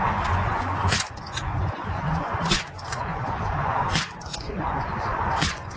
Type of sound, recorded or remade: remade